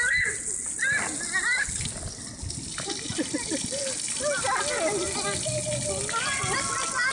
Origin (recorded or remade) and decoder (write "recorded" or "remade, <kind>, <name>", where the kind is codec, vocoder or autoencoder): recorded